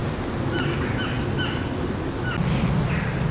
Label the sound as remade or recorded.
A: recorded